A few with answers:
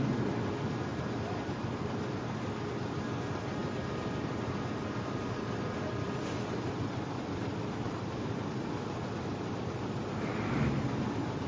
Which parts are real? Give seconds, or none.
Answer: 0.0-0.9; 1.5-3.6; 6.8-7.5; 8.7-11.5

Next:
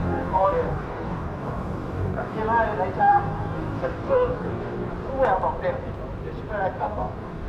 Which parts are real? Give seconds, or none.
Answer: 2.4-3.0; 4.9-6.8

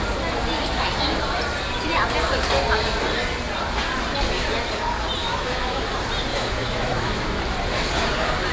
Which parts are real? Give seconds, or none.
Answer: 0.0-5.2; 5.8-6.3; 7.4-8.5

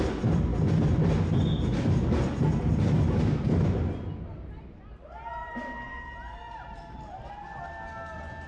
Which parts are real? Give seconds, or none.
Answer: 0.0-5.4; 7.3-8.5